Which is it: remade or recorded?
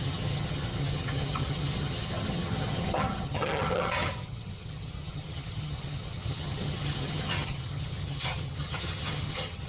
remade